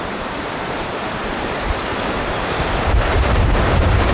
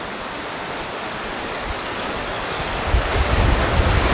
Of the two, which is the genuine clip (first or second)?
second